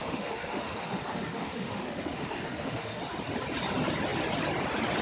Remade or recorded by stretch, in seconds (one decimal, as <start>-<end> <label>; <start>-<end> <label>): 0.0-3.0 remade; 3.0-5.0 recorded